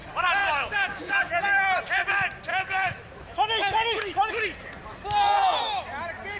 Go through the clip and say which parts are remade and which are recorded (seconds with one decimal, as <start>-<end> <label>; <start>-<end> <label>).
0.0-0.4 recorded; 0.4-1.3 remade; 1.3-2.5 recorded; 2.5-4.3 remade; 4.3-6.4 recorded